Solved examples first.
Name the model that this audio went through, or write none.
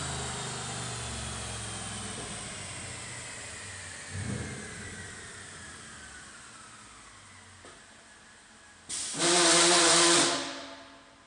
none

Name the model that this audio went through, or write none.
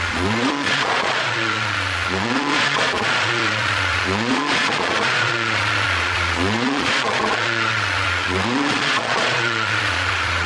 vocoder, Vocos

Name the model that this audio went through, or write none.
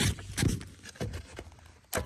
none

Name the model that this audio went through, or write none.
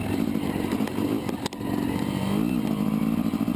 none